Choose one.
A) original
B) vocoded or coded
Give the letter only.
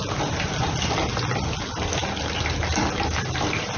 A